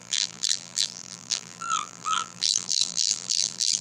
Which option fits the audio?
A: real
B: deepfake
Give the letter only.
B